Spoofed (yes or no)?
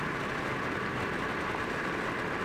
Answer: no